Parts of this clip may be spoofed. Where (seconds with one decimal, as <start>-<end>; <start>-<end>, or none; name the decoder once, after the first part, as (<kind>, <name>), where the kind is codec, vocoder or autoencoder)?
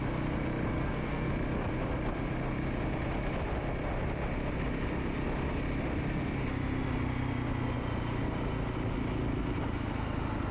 0.7-1.3 (codec, SNAC)